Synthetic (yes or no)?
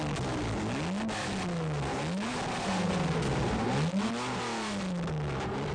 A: no